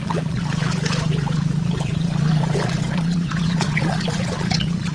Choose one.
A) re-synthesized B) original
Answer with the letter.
A